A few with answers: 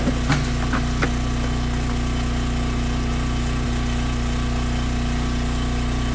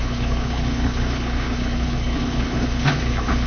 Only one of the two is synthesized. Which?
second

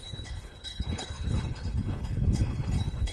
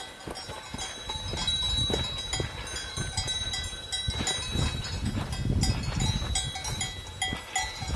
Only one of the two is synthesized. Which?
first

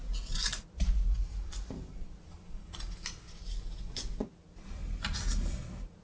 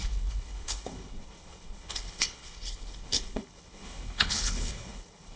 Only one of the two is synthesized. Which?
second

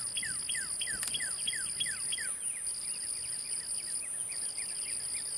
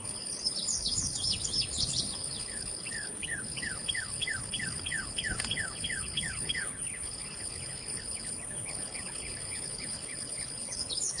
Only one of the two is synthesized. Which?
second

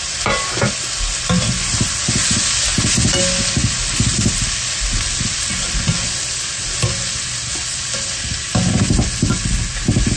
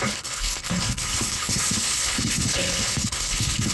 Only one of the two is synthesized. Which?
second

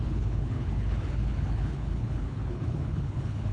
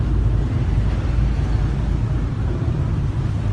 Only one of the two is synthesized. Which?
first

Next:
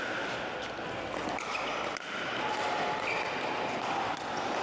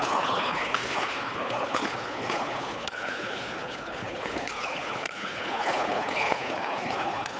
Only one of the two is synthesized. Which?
second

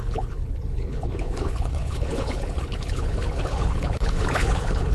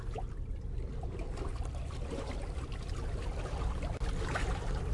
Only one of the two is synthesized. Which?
first